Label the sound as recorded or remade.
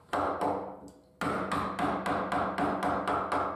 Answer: recorded